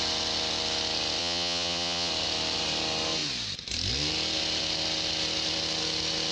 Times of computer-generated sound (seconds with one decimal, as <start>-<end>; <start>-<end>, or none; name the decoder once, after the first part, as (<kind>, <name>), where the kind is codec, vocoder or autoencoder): 1.2-2.1 (vocoder, Vocos)